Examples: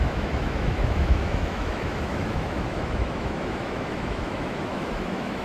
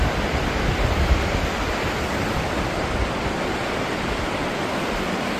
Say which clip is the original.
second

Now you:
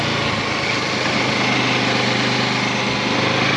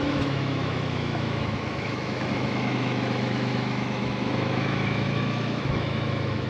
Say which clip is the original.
first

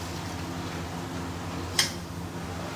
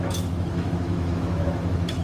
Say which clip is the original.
first